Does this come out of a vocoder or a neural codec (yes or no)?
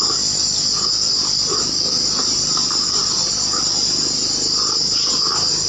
no